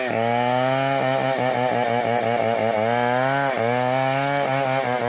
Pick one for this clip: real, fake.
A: real